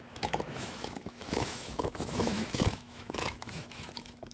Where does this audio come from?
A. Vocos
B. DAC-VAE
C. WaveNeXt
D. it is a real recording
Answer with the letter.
B